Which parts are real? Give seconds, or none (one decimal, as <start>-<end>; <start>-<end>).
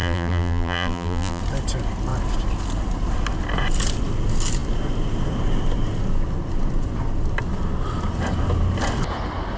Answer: 1.4-9.6